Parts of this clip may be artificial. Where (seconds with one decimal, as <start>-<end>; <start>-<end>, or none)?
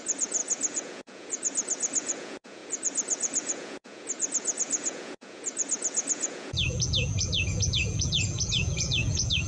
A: 0.0-9.5